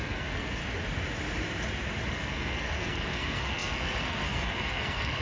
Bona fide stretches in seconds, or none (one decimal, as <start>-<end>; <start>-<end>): 0.6-2.1